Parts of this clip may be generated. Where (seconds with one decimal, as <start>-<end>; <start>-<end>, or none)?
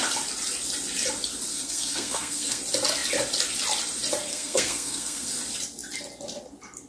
1.5-2.6; 4.3-5.3